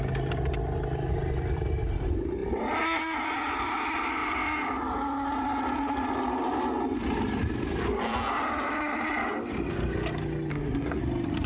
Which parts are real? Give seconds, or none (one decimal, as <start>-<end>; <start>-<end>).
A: 0.0-10.5; 11.0-11.5